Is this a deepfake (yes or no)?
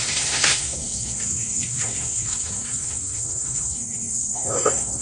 yes